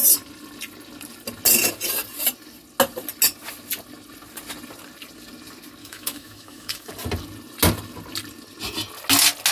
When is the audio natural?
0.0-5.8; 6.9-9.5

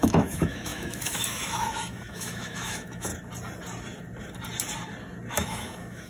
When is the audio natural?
3.1-5.3

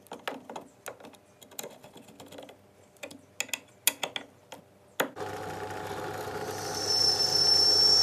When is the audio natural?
0.0-8.0

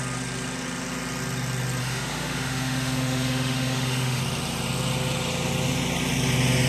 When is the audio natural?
0.0-1.8; 4.2-6.7

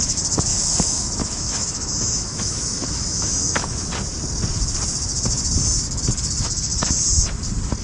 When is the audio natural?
0.0-0.5; 3.9-7.8

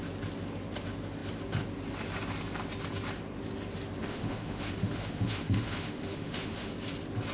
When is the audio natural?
0.0-4.0; 6.7-7.3

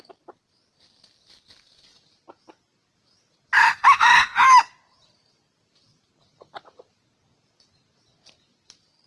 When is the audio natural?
0.0-3.6; 4.2-9.1

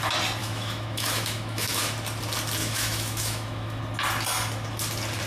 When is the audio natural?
0.0-0.4; 1.8-2.6; 3.8-5.3